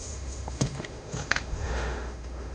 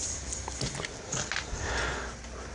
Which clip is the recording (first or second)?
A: second